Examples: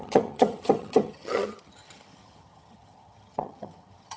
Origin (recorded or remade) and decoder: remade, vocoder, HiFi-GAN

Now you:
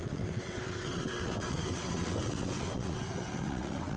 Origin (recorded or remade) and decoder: remade, vocoder, WaveNeXt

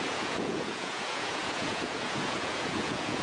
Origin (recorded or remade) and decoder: remade, vocoder, Vocos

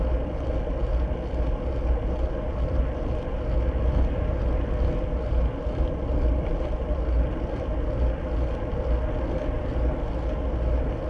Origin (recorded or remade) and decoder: recorded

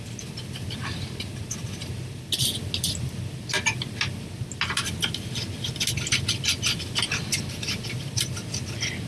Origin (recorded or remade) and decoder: recorded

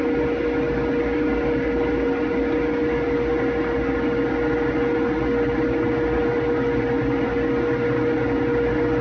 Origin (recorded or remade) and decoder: recorded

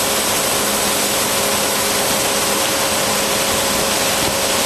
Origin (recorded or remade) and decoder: recorded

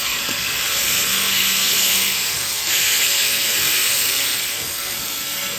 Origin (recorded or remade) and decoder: remade, codec, SNAC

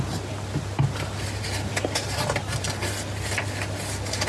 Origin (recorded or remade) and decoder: recorded